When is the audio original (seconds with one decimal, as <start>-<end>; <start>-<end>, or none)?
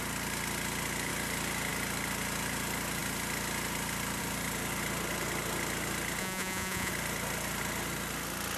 0.0-6.2; 6.9-8.6